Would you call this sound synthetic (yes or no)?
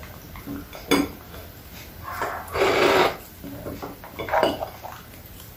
no